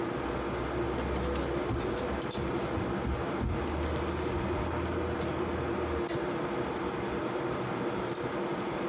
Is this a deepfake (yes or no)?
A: no